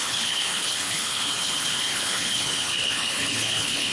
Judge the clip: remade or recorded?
remade